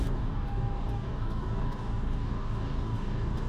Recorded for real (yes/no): no